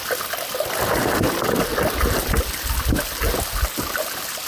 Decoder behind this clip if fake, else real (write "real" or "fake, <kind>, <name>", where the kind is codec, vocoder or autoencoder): real